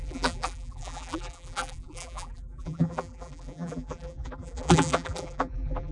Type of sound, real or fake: fake